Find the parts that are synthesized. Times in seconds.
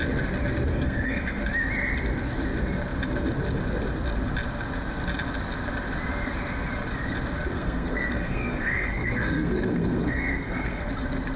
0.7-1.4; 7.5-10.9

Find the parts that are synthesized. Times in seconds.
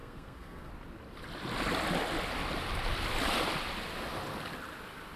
0.0-0.7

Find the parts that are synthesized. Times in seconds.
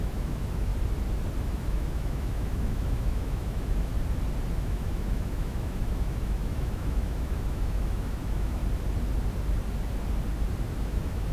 0.0-0.7; 1.4-3.9; 4.5-8.6; 10.8-11.3